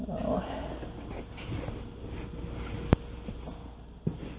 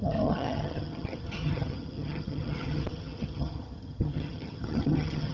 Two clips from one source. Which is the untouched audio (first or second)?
first